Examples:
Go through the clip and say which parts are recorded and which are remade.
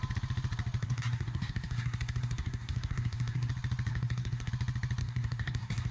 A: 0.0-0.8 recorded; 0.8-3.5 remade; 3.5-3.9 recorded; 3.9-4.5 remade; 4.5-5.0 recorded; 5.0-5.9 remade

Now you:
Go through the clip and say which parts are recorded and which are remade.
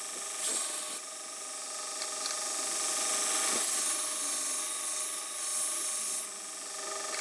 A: 0.0-7.2 recorded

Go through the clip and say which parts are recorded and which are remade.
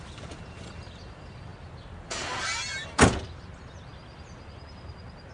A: 0.0-5.3 recorded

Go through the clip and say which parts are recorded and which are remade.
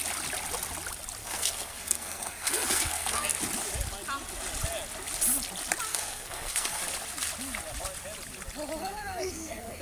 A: 0.0-1.2 recorded; 1.2-3.4 remade; 3.4-5.9 recorded; 5.9-6.8 remade; 6.8-8.8 recorded; 8.8-9.8 remade